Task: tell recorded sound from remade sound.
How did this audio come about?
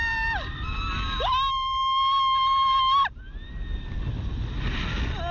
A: recorded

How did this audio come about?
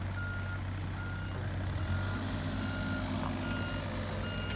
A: recorded